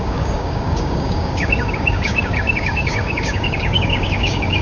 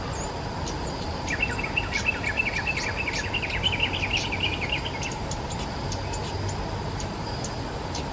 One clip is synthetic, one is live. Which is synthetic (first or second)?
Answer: first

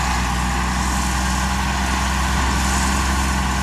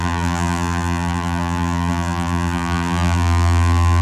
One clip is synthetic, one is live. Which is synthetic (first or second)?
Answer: second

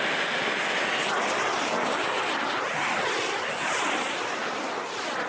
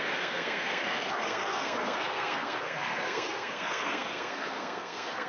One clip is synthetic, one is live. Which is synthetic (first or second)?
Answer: second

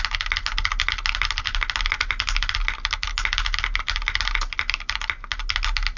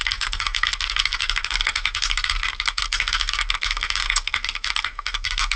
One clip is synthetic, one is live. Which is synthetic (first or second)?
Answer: second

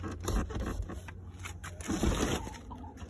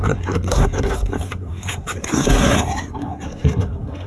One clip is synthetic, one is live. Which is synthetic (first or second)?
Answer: second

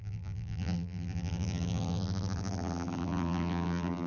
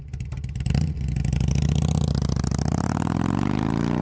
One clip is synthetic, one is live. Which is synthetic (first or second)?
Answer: first